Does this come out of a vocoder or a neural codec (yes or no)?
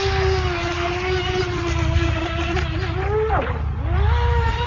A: no